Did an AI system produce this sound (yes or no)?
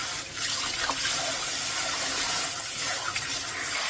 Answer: no